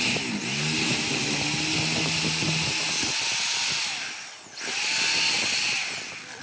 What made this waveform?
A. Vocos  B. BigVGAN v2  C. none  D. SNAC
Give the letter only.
C